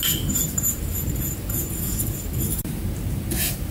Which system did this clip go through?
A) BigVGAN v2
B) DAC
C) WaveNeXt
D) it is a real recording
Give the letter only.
A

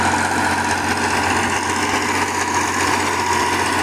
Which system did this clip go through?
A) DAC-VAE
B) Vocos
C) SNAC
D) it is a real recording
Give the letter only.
D